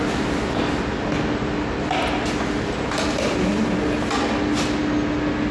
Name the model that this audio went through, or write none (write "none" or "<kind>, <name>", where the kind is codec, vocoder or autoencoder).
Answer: none